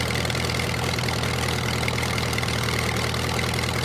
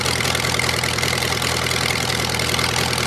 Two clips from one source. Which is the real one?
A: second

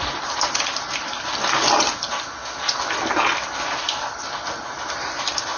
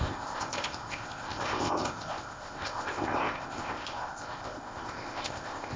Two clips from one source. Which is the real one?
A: first